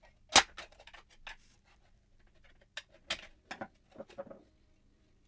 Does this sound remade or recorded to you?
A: recorded